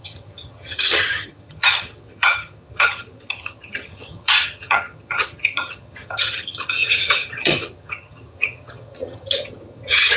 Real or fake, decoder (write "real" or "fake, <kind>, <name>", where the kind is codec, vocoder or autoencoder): fake, vocoder, HiFi-GAN